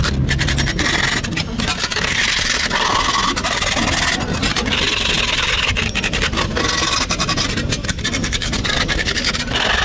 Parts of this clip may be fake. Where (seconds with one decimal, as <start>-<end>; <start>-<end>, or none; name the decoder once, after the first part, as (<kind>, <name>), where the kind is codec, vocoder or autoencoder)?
8.2-9.3 (codec, DAC)

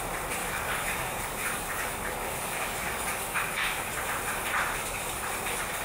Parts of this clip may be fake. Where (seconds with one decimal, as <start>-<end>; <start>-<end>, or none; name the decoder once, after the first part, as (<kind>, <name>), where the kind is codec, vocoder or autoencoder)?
0.4-3.9 (codec, DAC); 4.8-5.3

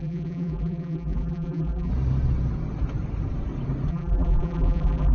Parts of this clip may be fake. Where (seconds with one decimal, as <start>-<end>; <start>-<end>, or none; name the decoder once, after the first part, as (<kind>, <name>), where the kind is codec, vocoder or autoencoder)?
0.0-1.9 (vocoder, BigVGAN v2); 3.9-5.1

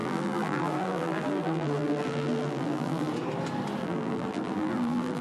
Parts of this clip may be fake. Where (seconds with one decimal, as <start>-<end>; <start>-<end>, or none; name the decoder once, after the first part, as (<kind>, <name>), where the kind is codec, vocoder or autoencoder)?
0.0-3.1 (vocoder, BigVGAN v2); 3.8-5.2

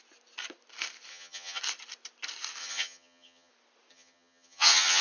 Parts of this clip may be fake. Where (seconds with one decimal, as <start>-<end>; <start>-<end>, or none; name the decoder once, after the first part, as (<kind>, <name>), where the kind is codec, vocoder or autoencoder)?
1.1-1.6 (vocoder, HiFi-GAN); 2.6-3.5; 3.9-5.0

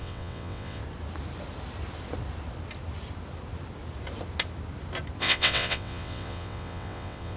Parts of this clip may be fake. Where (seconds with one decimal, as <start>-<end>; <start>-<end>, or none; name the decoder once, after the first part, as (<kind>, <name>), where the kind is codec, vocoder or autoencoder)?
0.0-0.8 (vocoder, WaveNeXt); 5.2-7.4

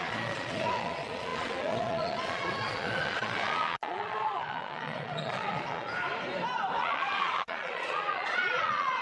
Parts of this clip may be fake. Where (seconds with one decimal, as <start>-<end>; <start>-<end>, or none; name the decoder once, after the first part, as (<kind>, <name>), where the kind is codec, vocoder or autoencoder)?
0.0-5.9 (vocoder, Vocos); 6.8-9.0

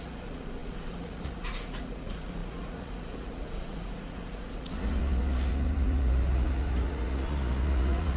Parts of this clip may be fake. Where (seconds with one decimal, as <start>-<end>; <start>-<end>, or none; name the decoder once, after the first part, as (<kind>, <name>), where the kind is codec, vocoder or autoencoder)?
0.0-8.2 (vocoder, Vocos)